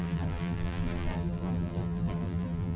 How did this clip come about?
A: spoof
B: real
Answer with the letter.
A